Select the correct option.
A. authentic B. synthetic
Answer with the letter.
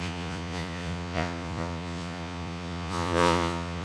B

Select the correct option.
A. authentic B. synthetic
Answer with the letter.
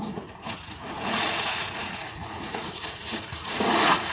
B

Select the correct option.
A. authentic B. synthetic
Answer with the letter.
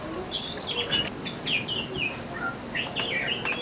A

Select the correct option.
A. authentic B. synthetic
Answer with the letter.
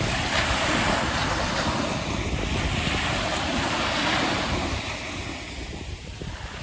A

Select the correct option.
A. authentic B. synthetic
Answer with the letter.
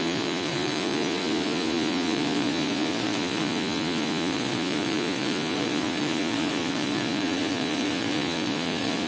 B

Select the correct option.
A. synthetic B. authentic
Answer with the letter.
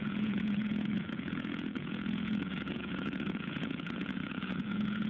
A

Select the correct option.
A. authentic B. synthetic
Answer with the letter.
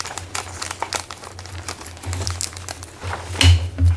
A